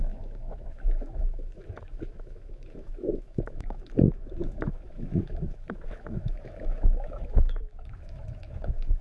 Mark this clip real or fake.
fake